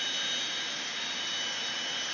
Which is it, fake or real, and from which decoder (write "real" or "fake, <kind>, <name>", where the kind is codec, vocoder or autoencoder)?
real